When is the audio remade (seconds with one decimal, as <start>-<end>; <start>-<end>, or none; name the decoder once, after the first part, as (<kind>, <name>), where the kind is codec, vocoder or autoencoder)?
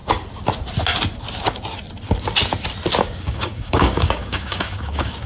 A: 3.0-5.3 (codec, DAC)